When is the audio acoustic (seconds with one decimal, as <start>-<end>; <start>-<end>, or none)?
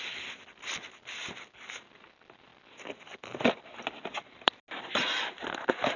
0.0-2.5; 4.6-6.0